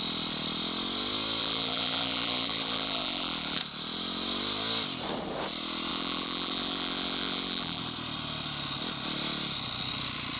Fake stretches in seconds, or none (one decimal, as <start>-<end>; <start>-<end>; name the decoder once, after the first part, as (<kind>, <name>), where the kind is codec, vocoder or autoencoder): 1.4-3.6 (vocoder, BigVGAN v2); 5.9-7.8